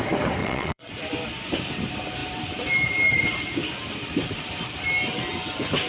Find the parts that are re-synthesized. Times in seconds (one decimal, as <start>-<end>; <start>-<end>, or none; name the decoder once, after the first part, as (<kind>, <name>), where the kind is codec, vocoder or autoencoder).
0.4-0.9 (vocoder, WaveNeXt)